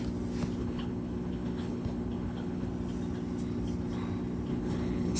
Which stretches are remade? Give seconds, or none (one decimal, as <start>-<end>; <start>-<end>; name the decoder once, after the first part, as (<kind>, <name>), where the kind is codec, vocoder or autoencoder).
0.6-2.7 (codec, HILCodec); 4.5-5.2